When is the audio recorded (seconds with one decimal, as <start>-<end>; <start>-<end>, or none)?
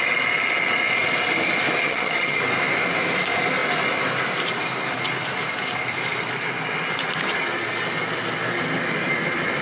0.0-1.8; 2.4-9.6